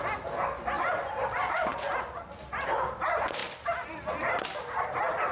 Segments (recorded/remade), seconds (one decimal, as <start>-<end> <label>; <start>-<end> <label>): 0.0-3.4 recorded; 3.4-3.9 remade; 3.9-5.3 recorded